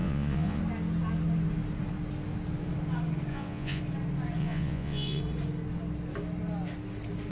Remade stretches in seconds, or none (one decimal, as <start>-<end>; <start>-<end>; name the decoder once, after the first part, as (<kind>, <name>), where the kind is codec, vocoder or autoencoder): 0.0-0.6 (vocoder, Vocos); 3.3-3.8; 4.4-5.2